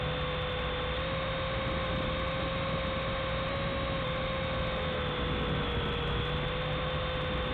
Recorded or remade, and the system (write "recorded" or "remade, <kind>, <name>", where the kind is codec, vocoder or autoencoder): recorded